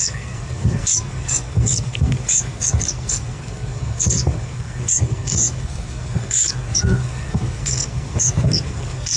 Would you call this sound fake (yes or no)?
yes